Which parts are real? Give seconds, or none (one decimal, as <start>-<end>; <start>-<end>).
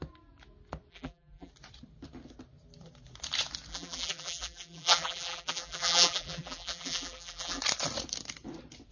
0.0-0.9; 1.5-3.7; 7.6-8.9